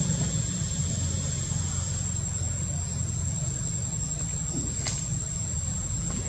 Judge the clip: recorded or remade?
recorded